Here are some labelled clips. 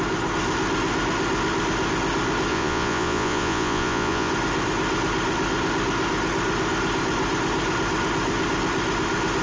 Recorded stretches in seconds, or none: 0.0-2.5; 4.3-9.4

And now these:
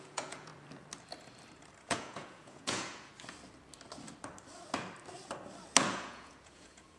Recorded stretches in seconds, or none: 0.5-1.8; 3.1-5.9

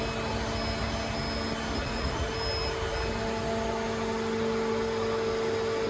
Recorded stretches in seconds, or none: 0.0-1.8; 2.3-5.9

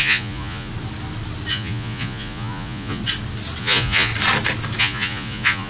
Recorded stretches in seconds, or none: 0.7-1.5; 3.0-3.6; 4.1-4.8

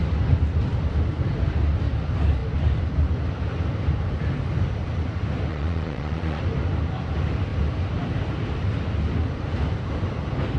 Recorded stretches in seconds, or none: 0.0-5.5; 6.4-10.6

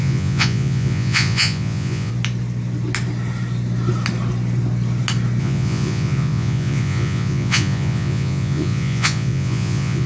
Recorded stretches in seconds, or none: 2.1-5.4